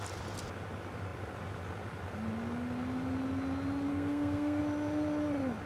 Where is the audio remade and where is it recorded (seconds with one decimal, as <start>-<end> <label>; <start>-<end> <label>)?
0.0-3.9 recorded; 3.9-4.6 remade; 4.6-5.7 recorded